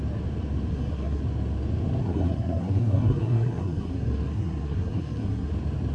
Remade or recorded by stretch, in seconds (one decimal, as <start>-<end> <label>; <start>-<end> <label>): 0.0-0.7 recorded; 0.7-1.2 remade; 1.2-2.0 recorded; 2.0-5.5 remade; 5.5-5.9 recorded